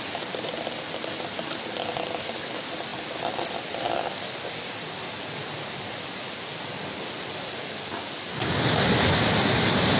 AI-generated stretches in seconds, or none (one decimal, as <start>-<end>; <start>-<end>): 0.0-10.0